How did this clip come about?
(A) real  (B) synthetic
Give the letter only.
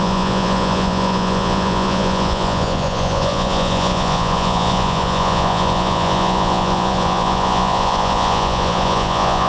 B